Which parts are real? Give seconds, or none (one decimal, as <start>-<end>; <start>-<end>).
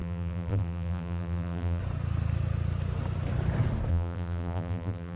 1.8-3.9